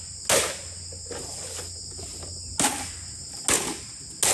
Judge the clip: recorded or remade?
recorded